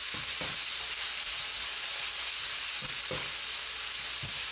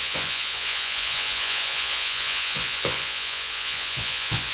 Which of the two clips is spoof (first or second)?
second